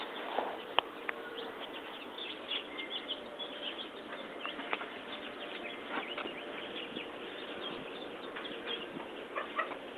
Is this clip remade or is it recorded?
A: recorded